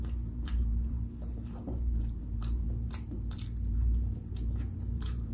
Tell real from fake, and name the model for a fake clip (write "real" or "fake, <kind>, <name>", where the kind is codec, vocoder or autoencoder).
fake, vocoder, BigVGAN v2